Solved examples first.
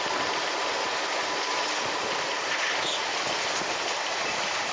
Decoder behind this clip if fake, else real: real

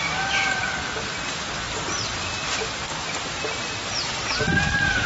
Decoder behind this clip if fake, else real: real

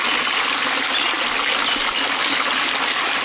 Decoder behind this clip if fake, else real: real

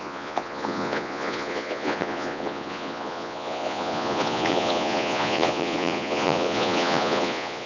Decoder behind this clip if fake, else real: fake, vocoder, Vocos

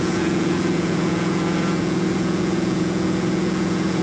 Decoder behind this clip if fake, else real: fake, vocoder, Vocos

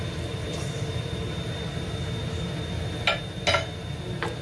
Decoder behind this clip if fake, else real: real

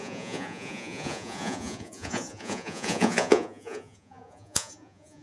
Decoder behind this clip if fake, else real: fake, vocoder, Vocos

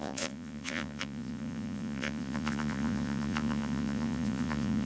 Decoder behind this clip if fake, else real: fake, vocoder, Vocos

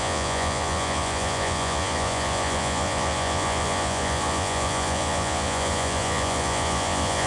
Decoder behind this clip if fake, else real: fake, vocoder, Vocos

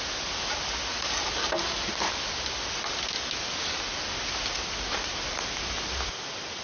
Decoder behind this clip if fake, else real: real